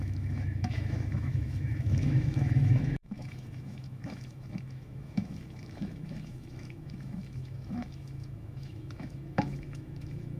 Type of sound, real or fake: fake